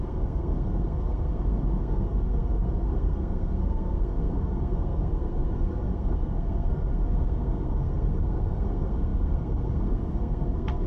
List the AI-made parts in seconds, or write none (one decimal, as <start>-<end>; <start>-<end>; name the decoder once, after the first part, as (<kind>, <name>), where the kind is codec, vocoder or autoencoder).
0.0-10.9 (codec, SNAC)